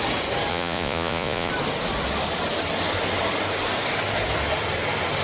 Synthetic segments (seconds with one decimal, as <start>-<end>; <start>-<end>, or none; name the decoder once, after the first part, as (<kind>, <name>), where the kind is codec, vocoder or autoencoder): 0.5-1.5 (vocoder, Vocos)